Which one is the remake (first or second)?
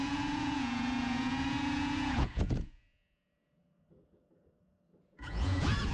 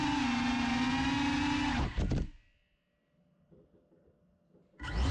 first